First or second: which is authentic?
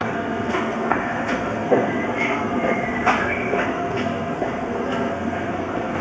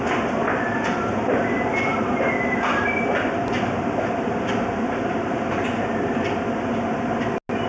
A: second